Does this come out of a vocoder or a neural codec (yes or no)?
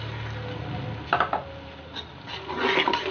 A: no